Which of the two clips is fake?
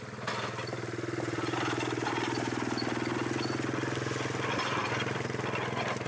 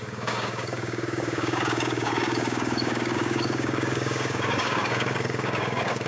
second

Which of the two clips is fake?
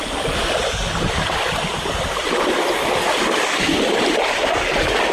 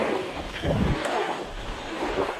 second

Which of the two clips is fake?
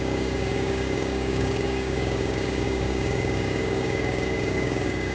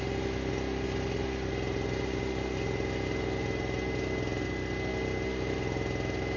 first